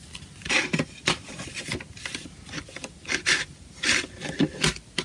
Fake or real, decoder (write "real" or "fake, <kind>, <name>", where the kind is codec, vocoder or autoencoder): real